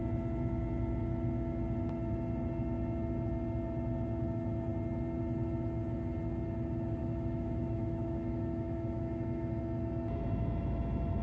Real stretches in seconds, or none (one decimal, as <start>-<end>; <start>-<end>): 0.0-7.0; 9.6-11.2